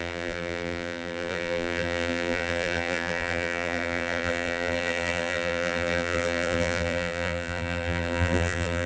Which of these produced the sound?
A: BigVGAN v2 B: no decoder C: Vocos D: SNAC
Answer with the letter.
A